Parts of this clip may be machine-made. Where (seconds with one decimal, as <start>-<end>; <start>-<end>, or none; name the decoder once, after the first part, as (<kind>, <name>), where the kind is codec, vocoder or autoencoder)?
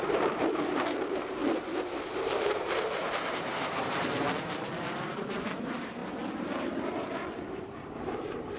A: 0.0-1.4 (vocoder, BigVGAN v2); 2.2-8.6